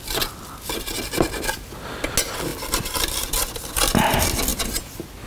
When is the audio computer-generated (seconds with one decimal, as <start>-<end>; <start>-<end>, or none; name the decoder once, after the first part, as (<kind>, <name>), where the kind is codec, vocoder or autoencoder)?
none